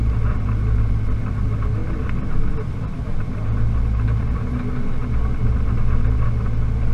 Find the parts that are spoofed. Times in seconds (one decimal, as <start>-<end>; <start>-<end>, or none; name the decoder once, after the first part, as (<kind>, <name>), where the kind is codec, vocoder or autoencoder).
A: none